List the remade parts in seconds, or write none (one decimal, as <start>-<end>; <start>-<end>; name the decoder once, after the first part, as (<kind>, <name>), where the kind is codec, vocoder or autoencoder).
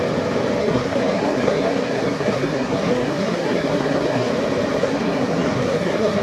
0.6-4.3 (codec, SNAC); 4.8-6.2